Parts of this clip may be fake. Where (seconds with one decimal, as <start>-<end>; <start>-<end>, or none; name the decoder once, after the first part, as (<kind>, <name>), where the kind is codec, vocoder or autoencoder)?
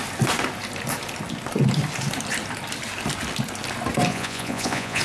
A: 4.1-5.0 (vocoder, Vocos)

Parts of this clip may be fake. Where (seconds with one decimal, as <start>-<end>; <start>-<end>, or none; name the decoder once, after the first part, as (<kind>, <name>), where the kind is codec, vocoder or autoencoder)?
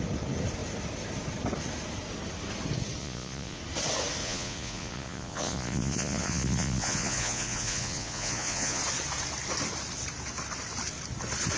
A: 3.0-3.6 (vocoder, Vocos); 4.2-8.8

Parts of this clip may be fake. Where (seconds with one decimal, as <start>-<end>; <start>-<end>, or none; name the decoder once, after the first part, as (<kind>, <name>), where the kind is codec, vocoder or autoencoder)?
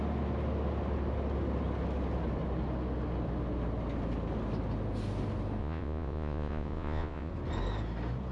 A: 5.6-7.3 (vocoder, Vocos)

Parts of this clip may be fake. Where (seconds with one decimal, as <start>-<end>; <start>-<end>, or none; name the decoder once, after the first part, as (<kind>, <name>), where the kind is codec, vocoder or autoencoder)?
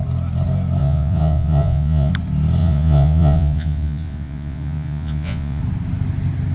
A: 0.8-2.1 (vocoder, Vocos); 2.6-5.6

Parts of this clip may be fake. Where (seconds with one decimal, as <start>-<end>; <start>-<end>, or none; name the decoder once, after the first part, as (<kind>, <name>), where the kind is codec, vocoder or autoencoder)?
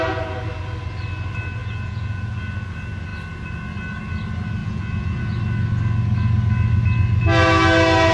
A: 1.6-2.4 (vocoder, Vocos); 4.6-5.2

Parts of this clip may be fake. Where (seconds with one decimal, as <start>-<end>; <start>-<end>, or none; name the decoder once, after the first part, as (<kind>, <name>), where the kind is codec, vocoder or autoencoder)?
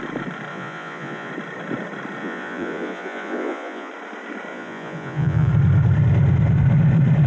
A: 0.5-1.3 (vocoder, Vocos); 2.2-3.9; 4.5-5.5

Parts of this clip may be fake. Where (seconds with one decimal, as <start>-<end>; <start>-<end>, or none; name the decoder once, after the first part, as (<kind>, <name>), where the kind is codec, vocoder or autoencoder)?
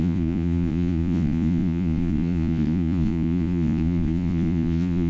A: 0.0-5.1 (vocoder, Vocos)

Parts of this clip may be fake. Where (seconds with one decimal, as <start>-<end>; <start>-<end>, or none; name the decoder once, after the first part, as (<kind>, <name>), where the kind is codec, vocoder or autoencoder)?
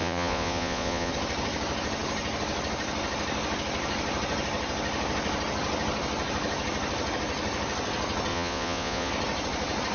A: 0.0-1.1 (vocoder, Vocos); 8.3-9.1